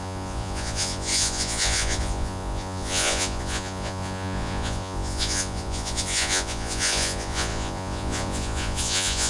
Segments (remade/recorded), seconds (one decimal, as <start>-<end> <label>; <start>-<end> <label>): 0.0-9.3 remade